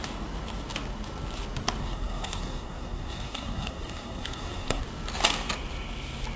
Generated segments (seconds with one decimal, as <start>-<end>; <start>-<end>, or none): 1.8-4.8